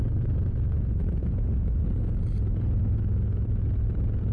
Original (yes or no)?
no